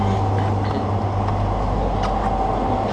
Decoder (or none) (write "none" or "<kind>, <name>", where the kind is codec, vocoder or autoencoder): none